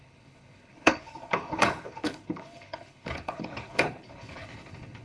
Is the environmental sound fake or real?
fake